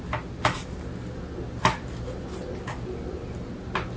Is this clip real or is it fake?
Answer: real